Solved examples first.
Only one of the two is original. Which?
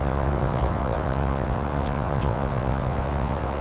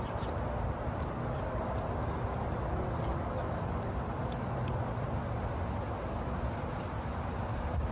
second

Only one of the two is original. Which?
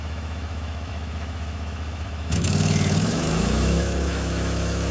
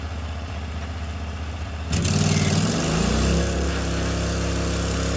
second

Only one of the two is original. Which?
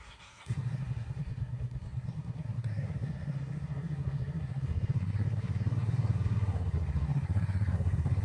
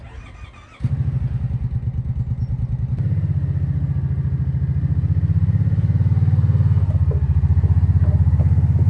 second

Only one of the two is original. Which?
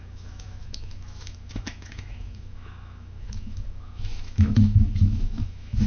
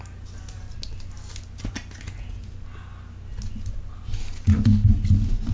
second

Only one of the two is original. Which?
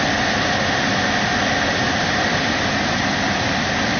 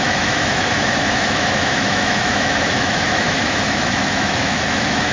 first